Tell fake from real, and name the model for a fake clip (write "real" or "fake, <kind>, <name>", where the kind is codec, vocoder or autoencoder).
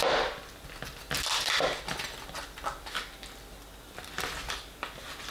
real